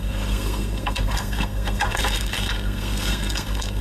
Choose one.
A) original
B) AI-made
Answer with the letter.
B